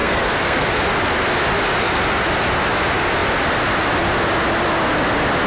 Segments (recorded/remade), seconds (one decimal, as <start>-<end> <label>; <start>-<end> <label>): 0.0-0.7 remade; 0.7-5.5 recorded